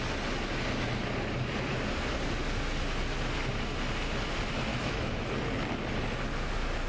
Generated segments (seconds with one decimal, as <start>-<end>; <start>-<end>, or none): 4.7-5.3